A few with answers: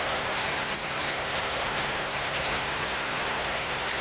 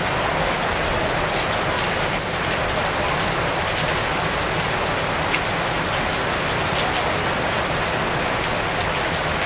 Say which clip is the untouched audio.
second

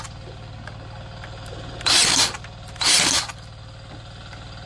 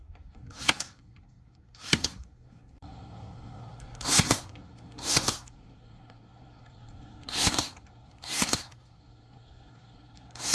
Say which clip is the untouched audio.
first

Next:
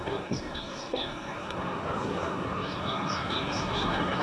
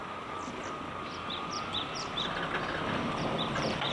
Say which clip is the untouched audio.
second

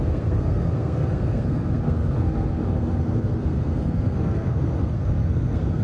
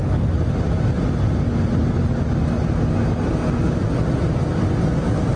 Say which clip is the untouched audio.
second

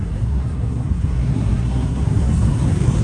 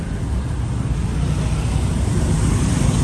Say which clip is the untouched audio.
second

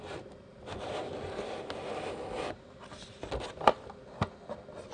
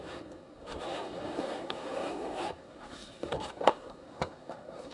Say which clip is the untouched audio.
first